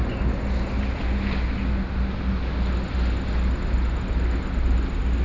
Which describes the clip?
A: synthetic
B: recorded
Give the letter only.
B